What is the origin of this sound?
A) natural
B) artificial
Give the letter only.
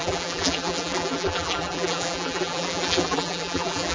B